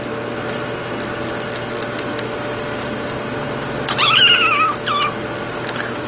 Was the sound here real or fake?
real